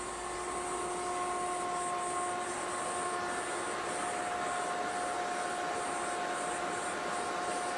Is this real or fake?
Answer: real